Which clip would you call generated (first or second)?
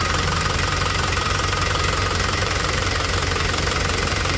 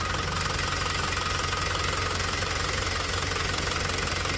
first